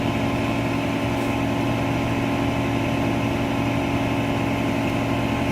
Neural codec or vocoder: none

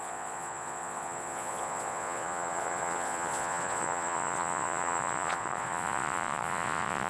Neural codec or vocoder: vocoder, Vocos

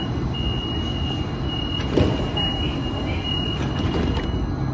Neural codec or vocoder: none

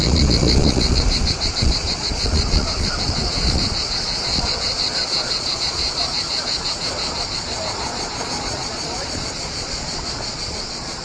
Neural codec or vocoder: vocoder, Vocos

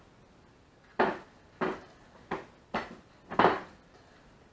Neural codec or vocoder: none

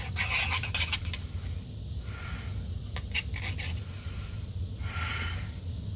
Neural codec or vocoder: none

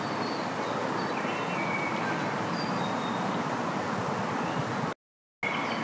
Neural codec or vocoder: none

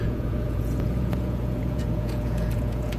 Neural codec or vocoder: vocoder, Vocos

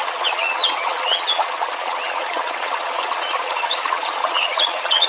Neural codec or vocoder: vocoder, Vocos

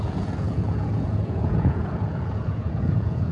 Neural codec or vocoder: vocoder, Vocos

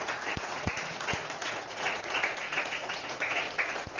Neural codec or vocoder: vocoder, Vocos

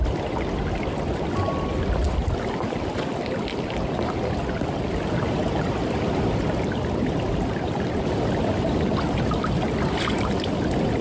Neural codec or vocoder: none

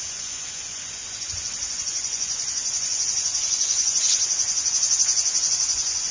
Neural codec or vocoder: vocoder, Vocos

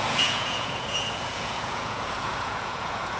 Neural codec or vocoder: vocoder, Vocos